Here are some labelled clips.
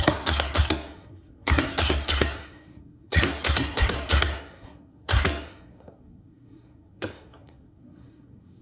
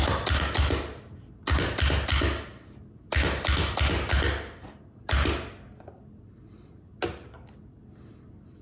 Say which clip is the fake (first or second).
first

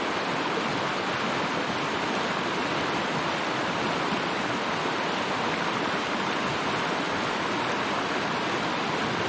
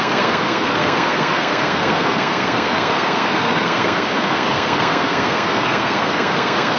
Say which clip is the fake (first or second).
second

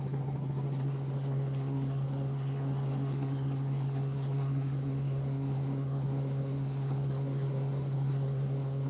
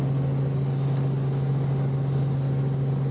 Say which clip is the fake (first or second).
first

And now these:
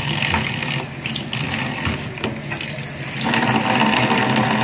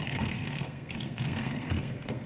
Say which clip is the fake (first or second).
second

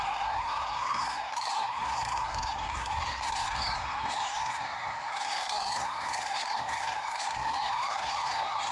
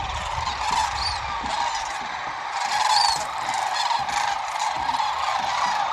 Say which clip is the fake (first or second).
first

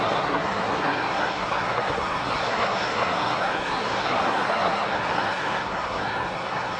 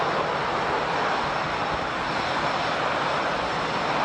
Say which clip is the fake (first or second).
first